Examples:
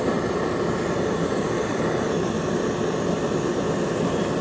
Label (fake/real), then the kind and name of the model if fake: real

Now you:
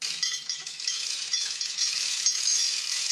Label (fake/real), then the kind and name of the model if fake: fake, autoencoder, DAC-VAE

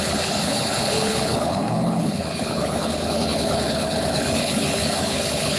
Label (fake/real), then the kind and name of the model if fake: fake, codec, HILCodec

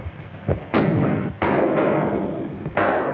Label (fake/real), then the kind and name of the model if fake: fake, codec, SNAC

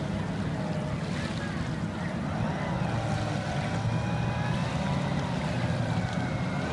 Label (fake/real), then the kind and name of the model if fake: real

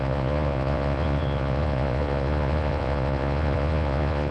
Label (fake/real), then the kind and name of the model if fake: fake, vocoder, Vocos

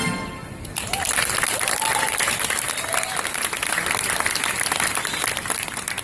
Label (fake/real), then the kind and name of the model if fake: real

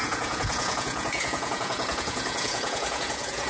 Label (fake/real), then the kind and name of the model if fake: fake, vocoder, Vocos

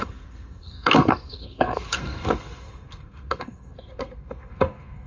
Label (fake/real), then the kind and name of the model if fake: fake, codec, SNAC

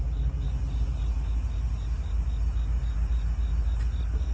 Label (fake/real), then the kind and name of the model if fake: real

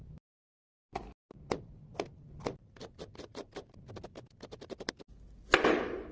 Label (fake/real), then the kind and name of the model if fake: real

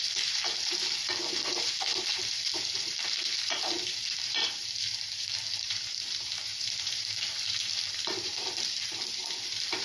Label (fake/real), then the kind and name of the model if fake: fake, vocoder, BigVGAN v2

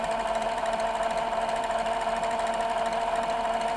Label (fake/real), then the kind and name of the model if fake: real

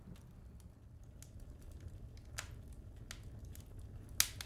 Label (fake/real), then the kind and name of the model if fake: real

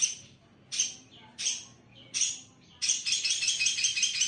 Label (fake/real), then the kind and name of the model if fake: fake, vocoder, BigVGAN v2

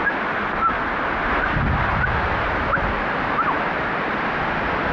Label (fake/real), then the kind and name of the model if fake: real